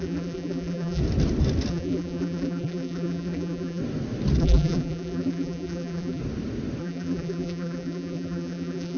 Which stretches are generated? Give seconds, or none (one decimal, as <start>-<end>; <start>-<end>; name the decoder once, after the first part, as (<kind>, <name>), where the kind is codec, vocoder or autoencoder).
0.0-1.0 (vocoder, BigVGAN v2); 1.7-3.8; 4.4-6.2; 6.8-9.0

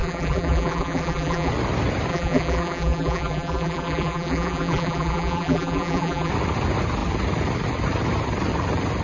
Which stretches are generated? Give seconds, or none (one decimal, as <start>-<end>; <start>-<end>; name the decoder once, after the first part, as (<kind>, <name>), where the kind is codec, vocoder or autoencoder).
0.0-1.5 (vocoder, BigVGAN v2); 2.1-6.3

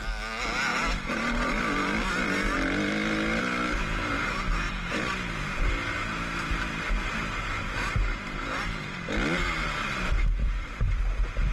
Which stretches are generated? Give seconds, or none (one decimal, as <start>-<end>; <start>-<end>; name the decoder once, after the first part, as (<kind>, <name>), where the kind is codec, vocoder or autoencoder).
10.4-11.0 (vocoder, BigVGAN v2)

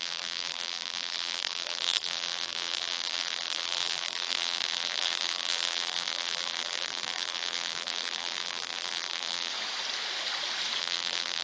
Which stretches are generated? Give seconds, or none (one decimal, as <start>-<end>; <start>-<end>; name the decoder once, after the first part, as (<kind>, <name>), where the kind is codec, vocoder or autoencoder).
0.0-9.5 (vocoder, BigVGAN v2); 10.8-11.4

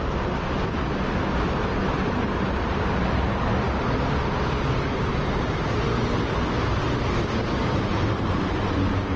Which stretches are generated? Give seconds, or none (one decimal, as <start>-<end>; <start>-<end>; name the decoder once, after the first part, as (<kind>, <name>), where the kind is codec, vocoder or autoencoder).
none